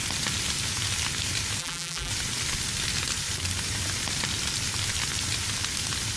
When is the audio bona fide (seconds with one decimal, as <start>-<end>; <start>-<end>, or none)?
0.0-1.6; 2.1-6.2